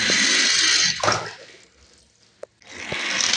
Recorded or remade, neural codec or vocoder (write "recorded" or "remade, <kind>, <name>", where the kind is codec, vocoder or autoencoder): recorded